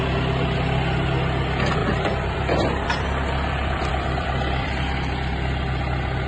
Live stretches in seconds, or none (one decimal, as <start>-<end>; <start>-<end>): 0.0-1.8; 4.9-6.3